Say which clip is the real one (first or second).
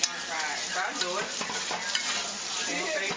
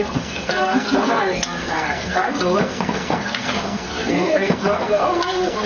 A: first